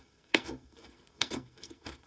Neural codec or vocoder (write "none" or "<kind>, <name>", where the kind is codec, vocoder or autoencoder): codec, SNAC